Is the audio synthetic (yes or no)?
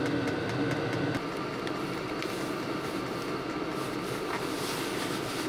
no